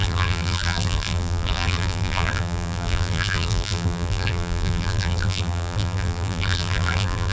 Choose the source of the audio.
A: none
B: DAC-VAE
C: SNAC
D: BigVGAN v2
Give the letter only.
D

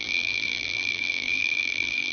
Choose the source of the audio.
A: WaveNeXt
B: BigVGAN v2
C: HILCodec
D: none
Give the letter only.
B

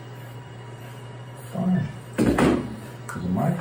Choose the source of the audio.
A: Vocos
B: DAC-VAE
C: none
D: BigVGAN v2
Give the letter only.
D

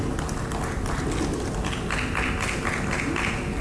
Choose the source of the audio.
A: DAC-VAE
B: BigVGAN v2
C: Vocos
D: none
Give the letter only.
D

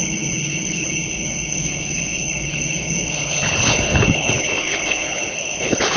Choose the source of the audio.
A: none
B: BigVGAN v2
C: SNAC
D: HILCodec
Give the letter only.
D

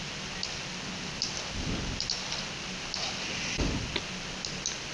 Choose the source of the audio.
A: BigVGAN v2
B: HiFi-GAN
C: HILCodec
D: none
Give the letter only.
D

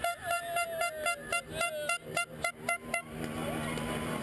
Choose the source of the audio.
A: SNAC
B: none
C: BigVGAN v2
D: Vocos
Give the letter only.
B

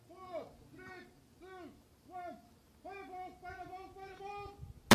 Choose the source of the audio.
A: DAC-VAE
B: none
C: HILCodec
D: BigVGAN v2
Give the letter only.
B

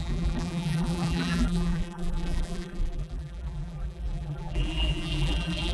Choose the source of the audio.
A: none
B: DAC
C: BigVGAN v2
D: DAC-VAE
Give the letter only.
C